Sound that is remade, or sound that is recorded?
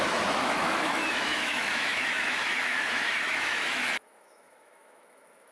remade